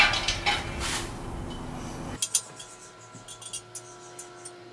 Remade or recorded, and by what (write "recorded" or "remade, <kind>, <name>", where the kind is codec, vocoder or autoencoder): recorded